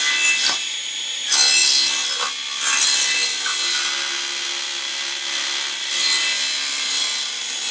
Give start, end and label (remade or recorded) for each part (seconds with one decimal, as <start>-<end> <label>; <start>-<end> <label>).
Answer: 0.0-7.7 recorded